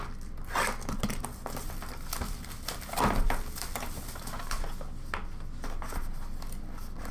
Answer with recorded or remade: recorded